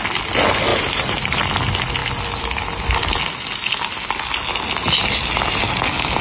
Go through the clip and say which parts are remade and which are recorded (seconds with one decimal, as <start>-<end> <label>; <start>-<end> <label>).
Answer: 0.0-0.7 recorded; 0.7-1.5 remade; 1.5-6.2 recorded